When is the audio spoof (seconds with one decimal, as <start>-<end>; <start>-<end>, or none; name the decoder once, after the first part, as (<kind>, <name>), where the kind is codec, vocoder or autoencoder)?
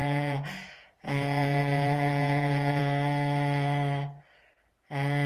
0.0-2.8 (vocoder, Vocos)